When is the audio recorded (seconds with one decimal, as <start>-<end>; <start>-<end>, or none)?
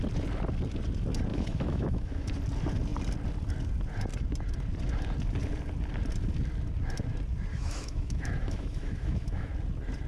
0.0-1.3; 2.3-7.5; 9.5-10.1